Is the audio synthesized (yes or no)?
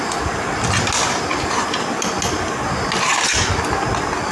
no